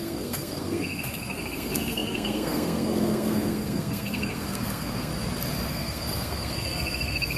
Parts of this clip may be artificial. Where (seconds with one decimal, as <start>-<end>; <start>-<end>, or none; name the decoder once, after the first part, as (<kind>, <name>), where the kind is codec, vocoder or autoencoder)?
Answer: 0.0-5.1 (codec, SNAC); 5.7-7.4